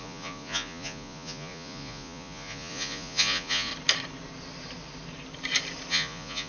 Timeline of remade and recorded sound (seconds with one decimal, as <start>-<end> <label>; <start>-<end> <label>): 0.0-3.7 remade; 3.7-5.9 recorded; 5.9-6.5 remade